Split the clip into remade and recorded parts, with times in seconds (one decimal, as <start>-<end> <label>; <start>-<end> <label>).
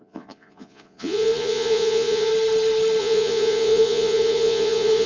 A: 0.0-2.3 remade; 2.3-3.0 recorded; 3.0-5.1 remade